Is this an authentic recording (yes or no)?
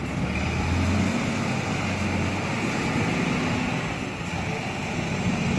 yes